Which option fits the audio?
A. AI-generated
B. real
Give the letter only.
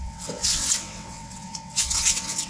A